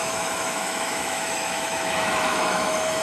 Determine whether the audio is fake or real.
fake